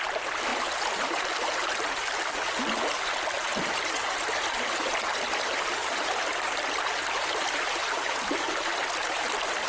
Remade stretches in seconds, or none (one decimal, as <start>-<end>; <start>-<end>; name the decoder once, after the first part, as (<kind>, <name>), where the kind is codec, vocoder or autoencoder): none